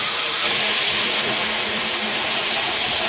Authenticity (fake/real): fake